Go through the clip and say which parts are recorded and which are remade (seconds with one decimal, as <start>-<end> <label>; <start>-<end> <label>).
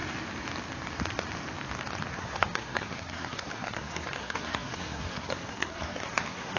0.0-2.1 recorded; 2.1-6.6 remade